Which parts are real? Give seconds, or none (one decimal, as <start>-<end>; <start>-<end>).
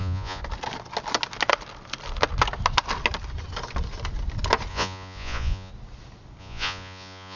0.4-4.7; 5.7-6.4